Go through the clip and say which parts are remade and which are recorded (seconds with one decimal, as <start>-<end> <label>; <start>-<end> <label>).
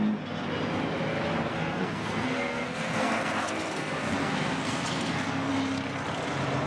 0.0-1.5 recorded; 1.5-5.5 remade; 5.5-6.7 recorded